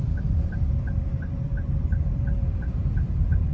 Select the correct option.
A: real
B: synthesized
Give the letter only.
B